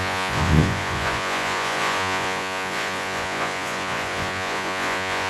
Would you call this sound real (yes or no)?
no